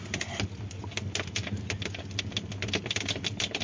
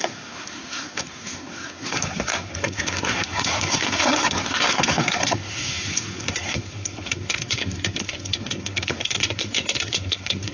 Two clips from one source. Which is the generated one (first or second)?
second